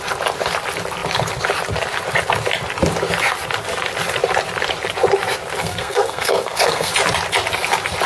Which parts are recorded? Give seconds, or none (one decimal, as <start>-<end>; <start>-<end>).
0.0-5.6; 6.9-8.1